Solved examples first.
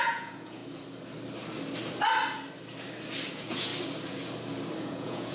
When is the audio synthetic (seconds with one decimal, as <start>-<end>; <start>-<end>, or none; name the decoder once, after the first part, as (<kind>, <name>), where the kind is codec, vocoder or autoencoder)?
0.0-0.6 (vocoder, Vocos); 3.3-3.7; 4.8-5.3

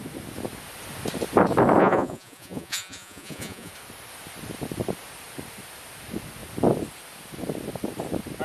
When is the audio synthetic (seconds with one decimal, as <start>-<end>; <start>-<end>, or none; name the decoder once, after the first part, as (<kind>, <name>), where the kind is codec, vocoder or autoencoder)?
1.8-3.7 (vocoder, Vocos)

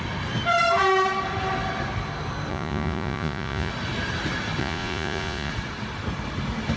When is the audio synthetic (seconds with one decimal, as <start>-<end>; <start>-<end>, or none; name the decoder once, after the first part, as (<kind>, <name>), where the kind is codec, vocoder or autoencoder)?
2.5-3.7 (vocoder, Vocos); 4.6-5.5